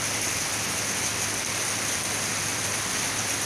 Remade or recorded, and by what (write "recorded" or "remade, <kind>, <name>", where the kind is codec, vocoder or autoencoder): recorded